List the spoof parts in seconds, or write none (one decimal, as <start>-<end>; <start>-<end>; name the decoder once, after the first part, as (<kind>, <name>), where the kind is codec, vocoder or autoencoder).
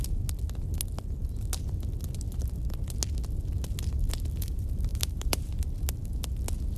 4.9-5.5 (vocoder, BigVGAN v2)